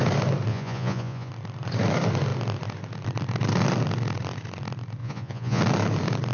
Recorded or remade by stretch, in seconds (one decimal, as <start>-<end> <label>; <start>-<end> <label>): 0.0-0.5 recorded; 0.5-1.3 remade; 1.3-5.0 recorded; 5.0-5.6 remade; 5.6-6.3 recorded

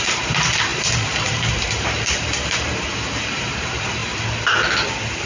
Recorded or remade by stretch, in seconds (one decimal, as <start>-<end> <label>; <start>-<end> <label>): 0.0-4.0 remade; 4.0-5.3 recorded

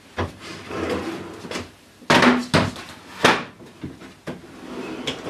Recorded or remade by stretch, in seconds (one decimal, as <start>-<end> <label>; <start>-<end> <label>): 0.0-5.3 recorded